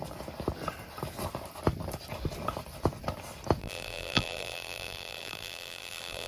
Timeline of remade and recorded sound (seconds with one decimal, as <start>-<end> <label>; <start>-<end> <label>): 0.0-3.6 recorded; 3.6-6.3 remade